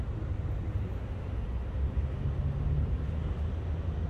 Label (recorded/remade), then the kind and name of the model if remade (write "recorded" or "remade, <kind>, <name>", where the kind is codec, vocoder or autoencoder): recorded